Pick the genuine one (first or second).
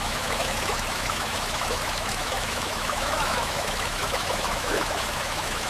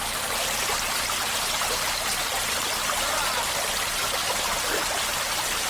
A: second